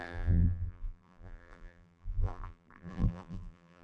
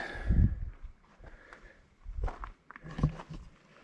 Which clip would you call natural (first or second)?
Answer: second